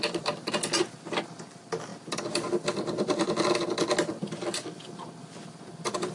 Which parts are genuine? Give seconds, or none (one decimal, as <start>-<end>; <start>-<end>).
0.0-6.1